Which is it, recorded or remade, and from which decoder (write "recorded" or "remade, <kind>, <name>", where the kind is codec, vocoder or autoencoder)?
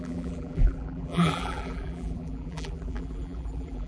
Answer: remade, vocoder, BigVGAN v2